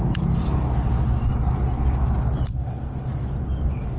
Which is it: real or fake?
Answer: real